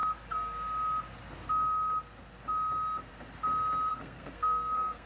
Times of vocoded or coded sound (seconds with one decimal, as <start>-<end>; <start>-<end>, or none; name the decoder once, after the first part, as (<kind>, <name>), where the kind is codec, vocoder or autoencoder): 3.9-5.1 (codec, SNAC)